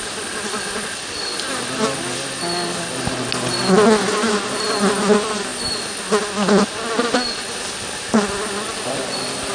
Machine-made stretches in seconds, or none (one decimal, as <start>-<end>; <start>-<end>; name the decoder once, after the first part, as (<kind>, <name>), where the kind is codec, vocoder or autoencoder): none